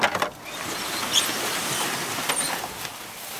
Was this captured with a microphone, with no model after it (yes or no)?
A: no